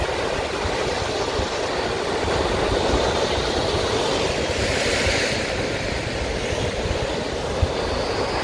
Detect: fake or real real